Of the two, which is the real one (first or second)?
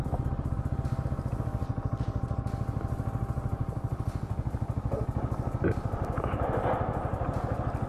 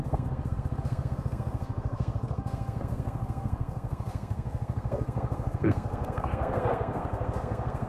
first